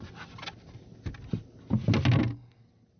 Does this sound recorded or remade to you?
recorded